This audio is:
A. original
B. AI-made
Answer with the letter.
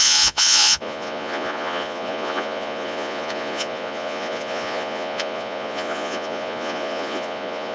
B